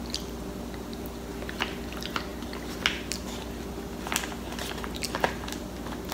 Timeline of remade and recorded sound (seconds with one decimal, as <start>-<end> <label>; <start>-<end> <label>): 0.0-6.1 recorded